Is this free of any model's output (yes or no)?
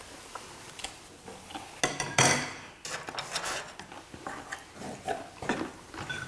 yes